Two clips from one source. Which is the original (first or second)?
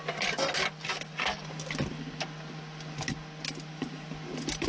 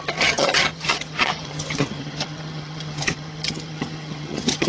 first